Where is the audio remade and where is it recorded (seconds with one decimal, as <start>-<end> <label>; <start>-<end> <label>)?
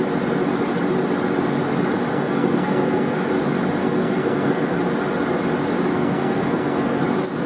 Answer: 0.0-2.1 recorded; 2.1-3.3 remade; 3.3-3.8 recorded; 3.8-4.8 remade; 4.8-5.9 recorded; 5.9-7.0 remade; 7.0-7.5 recorded